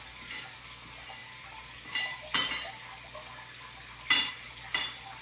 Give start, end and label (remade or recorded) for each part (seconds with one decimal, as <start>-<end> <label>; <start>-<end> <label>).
0.0-5.2 recorded